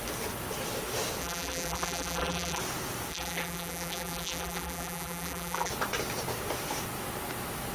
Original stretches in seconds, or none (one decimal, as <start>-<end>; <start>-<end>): 0.0-1.2; 2.6-3.1; 5.7-7.7